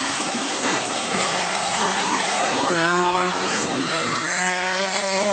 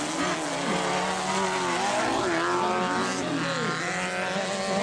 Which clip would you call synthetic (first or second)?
first